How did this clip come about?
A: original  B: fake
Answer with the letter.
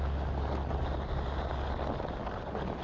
A